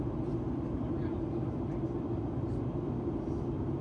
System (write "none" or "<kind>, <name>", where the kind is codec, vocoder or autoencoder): none